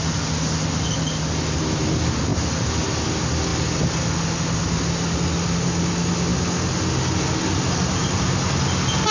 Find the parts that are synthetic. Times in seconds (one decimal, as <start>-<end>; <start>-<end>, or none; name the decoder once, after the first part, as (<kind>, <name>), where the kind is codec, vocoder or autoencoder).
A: none